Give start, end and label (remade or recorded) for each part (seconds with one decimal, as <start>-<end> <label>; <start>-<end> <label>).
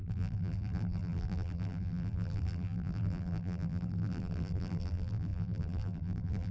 0.0-6.5 remade